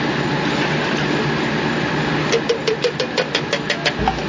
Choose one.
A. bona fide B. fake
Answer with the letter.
A